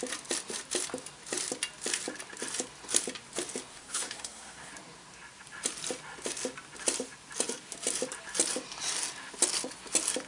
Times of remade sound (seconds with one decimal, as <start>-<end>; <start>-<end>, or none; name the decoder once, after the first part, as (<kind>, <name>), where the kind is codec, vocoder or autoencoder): 3.7-4.7 (codec, SNAC)